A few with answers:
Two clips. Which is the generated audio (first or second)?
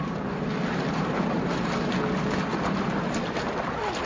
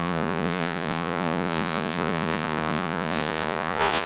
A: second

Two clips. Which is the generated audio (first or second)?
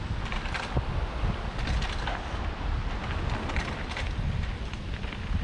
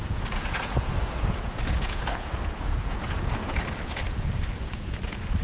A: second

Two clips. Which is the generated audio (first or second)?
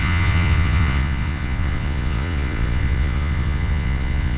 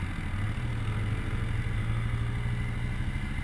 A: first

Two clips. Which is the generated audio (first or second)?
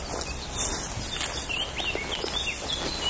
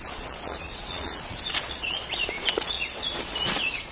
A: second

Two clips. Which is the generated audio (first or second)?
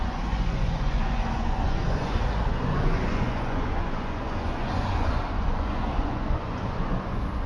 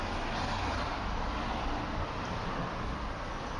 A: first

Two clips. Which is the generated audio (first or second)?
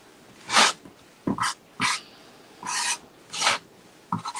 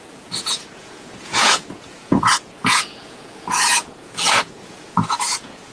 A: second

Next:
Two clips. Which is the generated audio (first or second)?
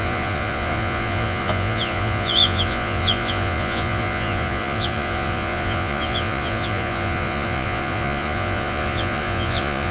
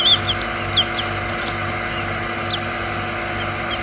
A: first